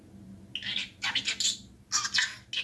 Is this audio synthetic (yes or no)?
no